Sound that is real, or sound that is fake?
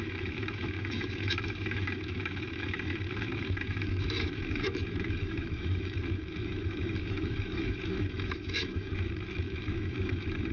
fake